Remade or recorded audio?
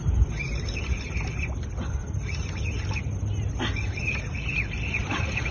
recorded